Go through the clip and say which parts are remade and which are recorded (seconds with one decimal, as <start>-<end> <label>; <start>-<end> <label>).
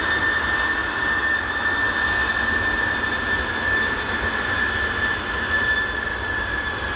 0.0-7.0 recorded